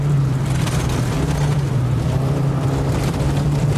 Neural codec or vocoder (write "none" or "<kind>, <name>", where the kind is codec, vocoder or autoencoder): vocoder, BigVGAN v2